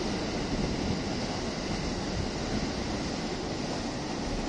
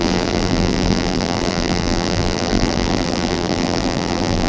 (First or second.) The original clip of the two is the first